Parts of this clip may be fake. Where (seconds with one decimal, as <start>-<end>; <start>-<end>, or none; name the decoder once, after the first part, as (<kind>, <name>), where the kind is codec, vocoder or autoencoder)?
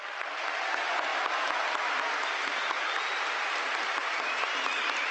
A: none